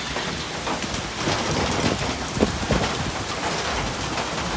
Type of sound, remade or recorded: recorded